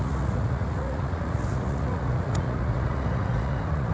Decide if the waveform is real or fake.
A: fake